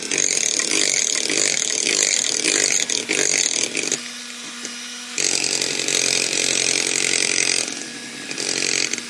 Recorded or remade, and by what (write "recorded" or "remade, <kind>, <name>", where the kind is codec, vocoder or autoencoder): recorded